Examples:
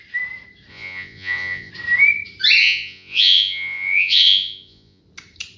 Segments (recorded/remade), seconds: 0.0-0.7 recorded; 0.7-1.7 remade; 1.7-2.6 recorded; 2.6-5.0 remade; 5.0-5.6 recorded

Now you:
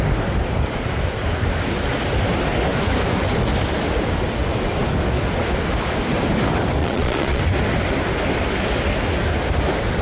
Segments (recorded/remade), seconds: 0.0-6.8 recorded; 6.8-7.4 remade; 7.4-10.0 recorded

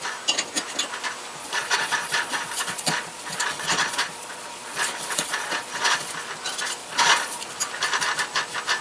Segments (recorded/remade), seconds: 0.0-1.4 recorded; 1.4-6.1 remade; 6.1-6.8 recorded; 6.8-7.5 remade; 7.5-8.8 recorded

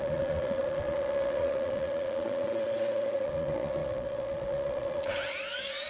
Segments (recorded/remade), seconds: 0.0-5.9 remade

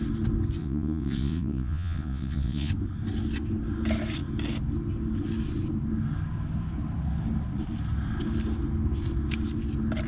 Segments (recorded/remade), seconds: 0.0-0.6 recorded; 0.6-2.7 remade; 2.7-10.1 recorded

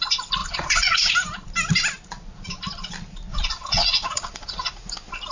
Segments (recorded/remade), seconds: 0.0-0.4 recorded; 0.4-1.1 remade; 1.1-3.3 recorded; 3.3-4.7 remade; 4.7-5.3 recorded

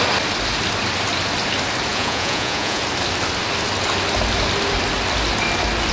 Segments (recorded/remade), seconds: 0.0-1.9 recorded; 1.9-2.8 remade; 2.8-5.9 recorded